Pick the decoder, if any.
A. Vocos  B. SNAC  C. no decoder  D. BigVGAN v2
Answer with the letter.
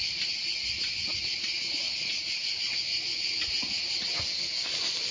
C